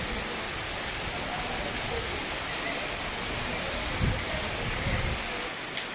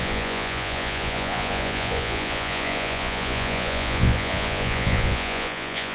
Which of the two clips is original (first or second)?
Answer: first